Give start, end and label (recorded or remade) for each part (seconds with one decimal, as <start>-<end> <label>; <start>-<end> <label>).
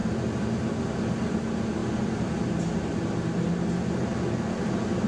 0.0-5.1 recorded